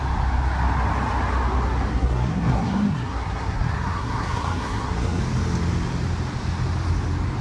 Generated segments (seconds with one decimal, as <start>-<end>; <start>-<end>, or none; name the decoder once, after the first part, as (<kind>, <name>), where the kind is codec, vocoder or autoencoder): 1.9-5.2 (codec, SNAC)